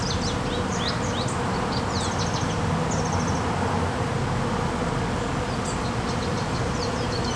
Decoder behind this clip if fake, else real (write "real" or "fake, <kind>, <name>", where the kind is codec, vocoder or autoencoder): real